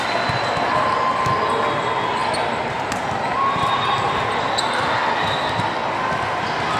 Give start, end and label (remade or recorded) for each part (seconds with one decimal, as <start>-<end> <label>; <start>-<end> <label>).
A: 0.0-6.8 recorded